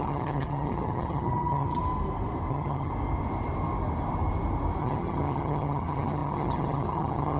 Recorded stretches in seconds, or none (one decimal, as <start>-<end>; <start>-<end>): 1.8-2.5; 2.9-4.8

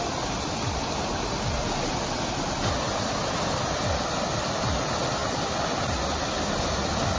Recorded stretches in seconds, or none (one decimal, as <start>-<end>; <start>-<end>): 0.0-7.2

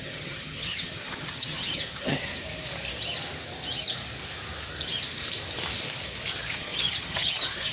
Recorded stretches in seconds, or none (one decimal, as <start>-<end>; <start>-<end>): 2.3-6.3

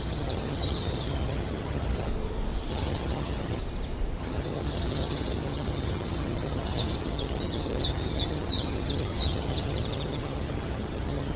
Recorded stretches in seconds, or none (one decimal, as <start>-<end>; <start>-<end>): 2.1-2.7; 3.6-4.2

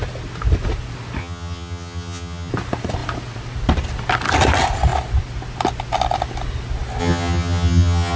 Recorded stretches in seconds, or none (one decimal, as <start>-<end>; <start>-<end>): 0.0-1.2; 2.5-7.0